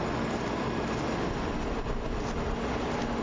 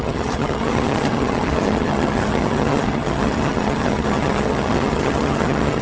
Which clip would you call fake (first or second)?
second